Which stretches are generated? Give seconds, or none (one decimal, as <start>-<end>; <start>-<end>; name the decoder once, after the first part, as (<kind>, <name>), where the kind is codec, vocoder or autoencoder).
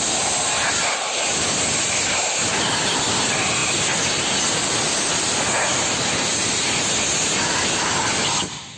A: none